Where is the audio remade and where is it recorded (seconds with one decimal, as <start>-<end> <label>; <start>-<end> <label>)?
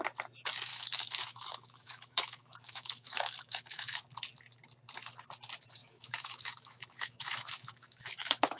0.0-0.7 recorded; 0.7-4.0 remade; 4.0-5.8 recorded; 5.8-8.6 remade